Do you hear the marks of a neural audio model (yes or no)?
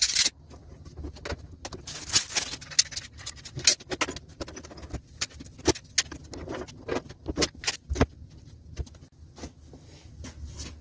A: no